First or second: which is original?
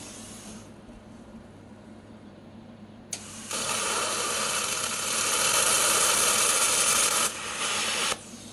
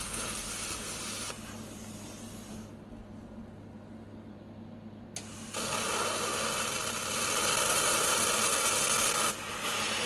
second